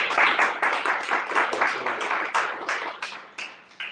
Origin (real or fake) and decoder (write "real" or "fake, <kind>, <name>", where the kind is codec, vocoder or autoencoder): real